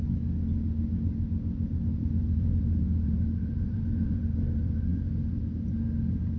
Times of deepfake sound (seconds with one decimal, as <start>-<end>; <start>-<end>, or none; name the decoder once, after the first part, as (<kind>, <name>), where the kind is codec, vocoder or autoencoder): 2.0-4.2 (vocoder, BigVGAN v2)